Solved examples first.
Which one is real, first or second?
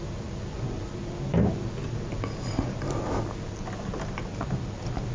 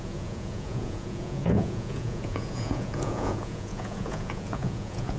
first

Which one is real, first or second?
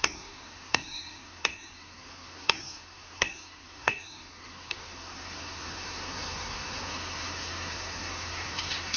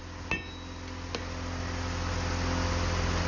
second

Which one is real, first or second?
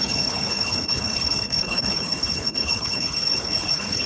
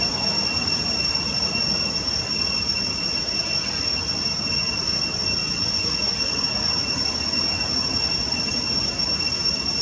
second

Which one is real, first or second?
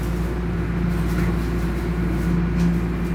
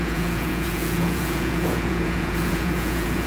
first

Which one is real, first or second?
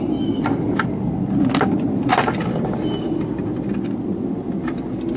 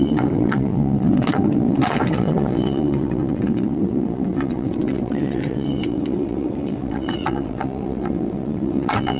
first